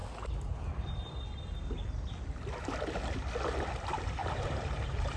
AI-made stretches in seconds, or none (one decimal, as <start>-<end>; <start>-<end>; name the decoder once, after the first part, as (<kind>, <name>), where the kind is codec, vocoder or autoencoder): 4.2-5.2 (vocoder, BigVGAN v2)